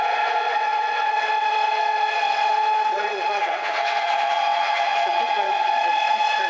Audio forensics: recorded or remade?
remade